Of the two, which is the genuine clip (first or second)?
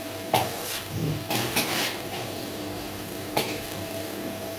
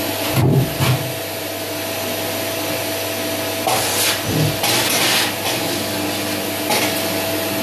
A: second